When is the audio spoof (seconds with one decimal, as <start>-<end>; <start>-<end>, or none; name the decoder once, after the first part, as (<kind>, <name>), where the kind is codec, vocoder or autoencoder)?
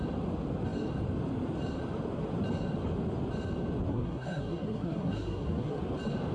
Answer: 3.9-5.8 (codec, SNAC)